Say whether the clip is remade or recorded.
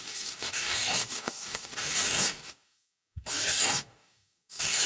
remade